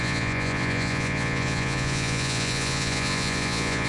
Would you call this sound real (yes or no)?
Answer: no